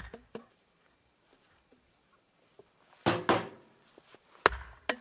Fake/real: real